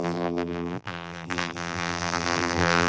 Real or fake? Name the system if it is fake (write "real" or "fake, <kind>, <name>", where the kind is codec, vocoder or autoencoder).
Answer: fake, vocoder, BigVGAN v2